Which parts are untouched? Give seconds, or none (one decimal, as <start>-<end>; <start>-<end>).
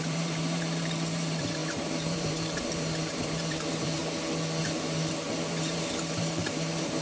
4.0-4.6